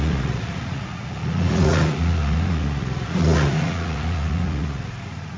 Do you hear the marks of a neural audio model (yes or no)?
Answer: yes